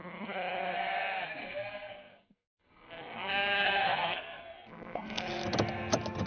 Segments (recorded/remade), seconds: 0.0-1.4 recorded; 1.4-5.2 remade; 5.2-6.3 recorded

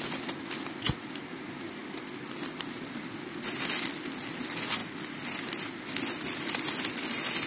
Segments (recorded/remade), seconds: 0.0-7.5 recorded

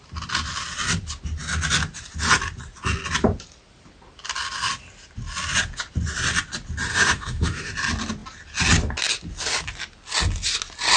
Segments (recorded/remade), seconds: 0.0-6.9 recorded; 6.9-7.7 remade; 7.7-11.0 recorded

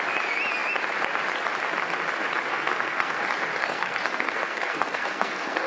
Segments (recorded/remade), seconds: 0.0-2.5 recorded; 2.5-3.2 remade; 3.2-3.6 recorded; 3.6-5.7 remade

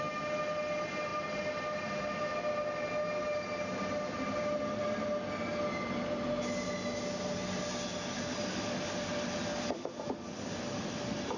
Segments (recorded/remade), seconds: 0.0-11.4 recorded

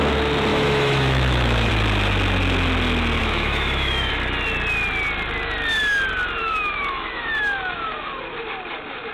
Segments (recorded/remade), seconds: 0.0-0.5 recorded; 0.5-1.7 remade; 1.7-3.2 recorded; 3.2-4.1 remade; 4.1-6.4 recorded; 6.4-8.2 remade; 8.2-9.1 recorded